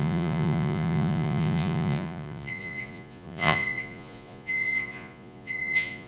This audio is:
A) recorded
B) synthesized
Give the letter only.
B